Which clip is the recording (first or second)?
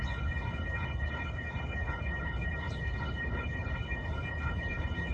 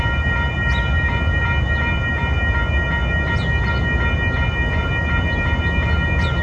second